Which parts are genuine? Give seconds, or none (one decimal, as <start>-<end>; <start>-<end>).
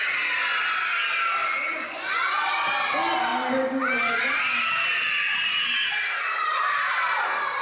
0.0-1.7; 2.4-7.6